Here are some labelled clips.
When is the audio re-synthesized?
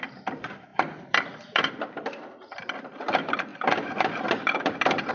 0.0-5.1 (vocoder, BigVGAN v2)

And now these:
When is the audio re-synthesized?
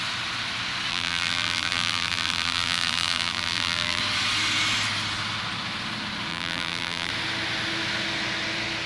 0.9-4.0 (vocoder, BigVGAN v2); 6.3-7.1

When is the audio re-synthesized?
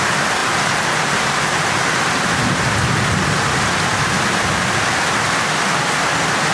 none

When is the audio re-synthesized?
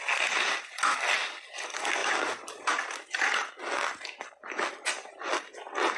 2.0-3.3 (vocoder, BigVGAN v2)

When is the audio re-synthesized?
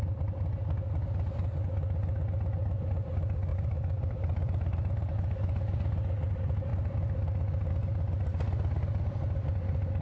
3.5-5.1 (vocoder, BigVGAN v2)